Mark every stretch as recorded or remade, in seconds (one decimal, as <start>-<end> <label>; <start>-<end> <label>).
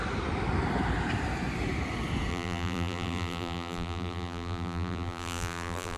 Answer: 0.0-2.3 recorded; 2.3-6.0 remade